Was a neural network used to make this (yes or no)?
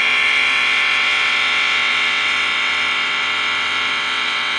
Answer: yes